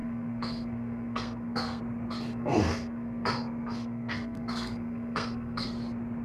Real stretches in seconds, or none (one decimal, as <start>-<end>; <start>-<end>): 1.8-2.3; 5.7-6.2